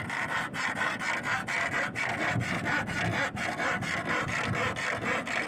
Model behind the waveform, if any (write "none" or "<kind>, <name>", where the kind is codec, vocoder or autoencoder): none